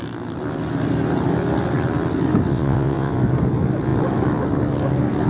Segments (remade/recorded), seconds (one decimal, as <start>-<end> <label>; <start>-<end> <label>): 0.0-2.5 recorded; 2.5-3.1 remade; 3.1-5.3 recorded